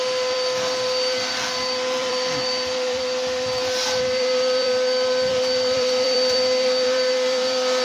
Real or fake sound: fake